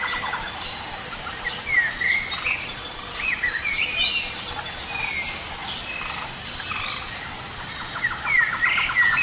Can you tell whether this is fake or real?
real